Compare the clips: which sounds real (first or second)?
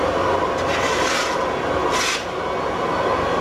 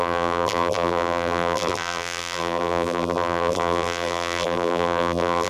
first